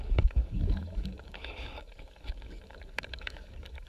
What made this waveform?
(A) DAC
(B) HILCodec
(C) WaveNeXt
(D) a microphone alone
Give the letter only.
A